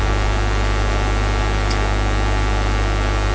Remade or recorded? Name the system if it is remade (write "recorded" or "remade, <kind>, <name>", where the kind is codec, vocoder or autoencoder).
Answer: recorded